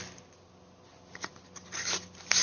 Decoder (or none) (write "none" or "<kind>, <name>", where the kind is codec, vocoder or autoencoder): none